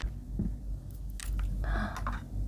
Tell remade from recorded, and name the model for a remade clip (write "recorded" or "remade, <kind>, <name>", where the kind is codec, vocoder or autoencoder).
recorded